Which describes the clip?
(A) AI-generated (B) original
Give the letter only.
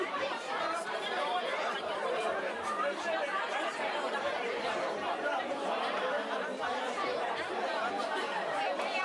A